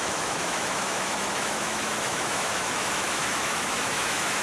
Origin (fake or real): fake